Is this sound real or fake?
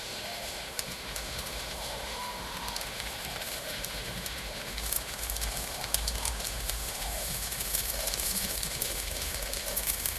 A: fake